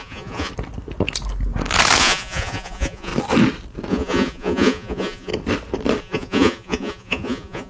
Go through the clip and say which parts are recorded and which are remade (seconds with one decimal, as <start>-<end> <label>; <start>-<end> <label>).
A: 0.0-0.5 remade; 0.5-2.0 recorded; 2.0-3.1 remade; 3.1-3.9 recorded; 3.9-5.3 remade; 5.3-6.0 recorded; 6.0-7.7 remade